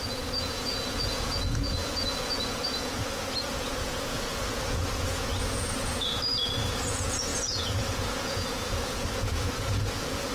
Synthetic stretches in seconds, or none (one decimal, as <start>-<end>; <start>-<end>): 0.0-10.3